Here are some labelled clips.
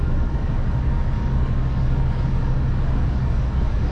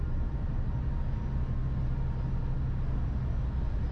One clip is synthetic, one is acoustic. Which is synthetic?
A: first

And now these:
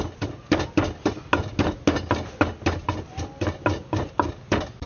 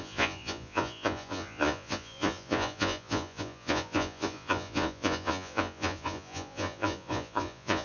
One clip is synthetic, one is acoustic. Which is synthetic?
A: second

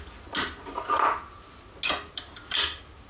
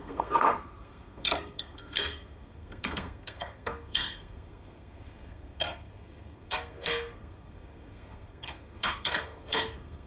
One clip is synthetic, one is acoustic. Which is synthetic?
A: second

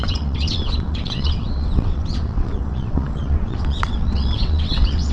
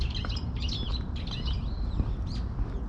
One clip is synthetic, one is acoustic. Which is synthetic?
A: first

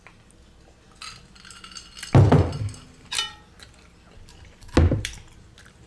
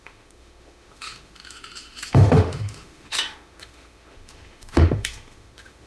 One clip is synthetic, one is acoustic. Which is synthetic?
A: second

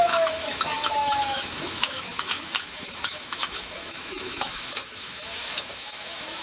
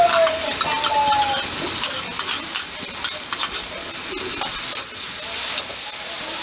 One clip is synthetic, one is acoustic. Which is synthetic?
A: first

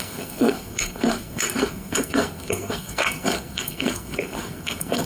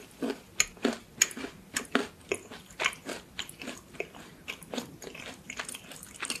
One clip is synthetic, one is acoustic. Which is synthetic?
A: first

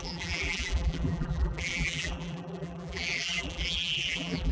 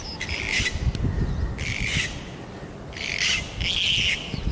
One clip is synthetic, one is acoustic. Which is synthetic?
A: first